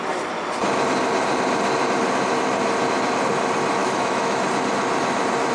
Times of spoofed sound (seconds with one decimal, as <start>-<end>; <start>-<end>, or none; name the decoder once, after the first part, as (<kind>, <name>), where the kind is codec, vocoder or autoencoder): 3.8-4.5 (autoencoder, DAC-VAE)